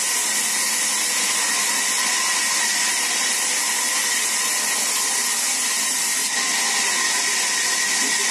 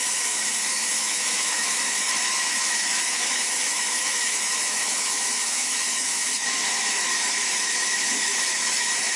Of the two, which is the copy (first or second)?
second